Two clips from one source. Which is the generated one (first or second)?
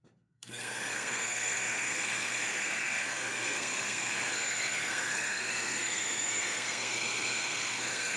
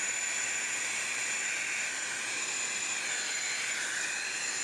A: first